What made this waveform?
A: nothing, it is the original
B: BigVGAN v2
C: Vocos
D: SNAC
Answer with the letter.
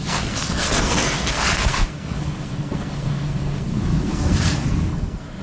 D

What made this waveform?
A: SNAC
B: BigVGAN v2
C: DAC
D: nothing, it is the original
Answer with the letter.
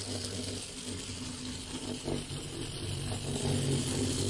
D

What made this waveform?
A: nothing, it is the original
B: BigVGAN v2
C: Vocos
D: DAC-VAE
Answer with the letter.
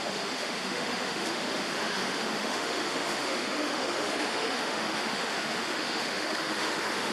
D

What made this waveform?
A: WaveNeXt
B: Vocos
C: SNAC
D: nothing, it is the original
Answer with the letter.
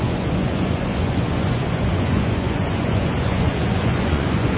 B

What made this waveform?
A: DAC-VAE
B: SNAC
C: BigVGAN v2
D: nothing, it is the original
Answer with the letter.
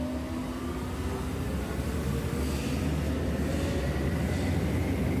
D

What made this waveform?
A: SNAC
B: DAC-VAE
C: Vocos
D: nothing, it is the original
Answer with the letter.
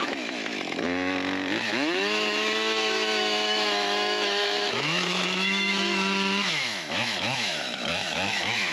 B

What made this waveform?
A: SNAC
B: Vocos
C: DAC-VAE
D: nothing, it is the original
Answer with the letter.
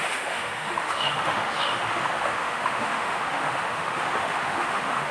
C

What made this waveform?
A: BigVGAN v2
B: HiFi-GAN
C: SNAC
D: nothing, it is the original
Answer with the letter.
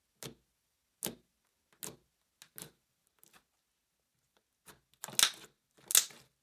D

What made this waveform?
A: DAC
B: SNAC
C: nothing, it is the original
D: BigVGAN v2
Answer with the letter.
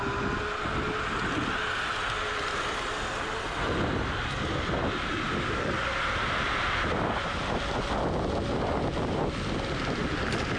C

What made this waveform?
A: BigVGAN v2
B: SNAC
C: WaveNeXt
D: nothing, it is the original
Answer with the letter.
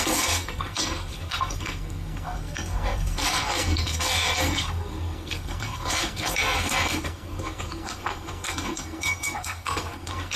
B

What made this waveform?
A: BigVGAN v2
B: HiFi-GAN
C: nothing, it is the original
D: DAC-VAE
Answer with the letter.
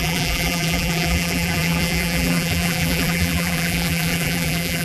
A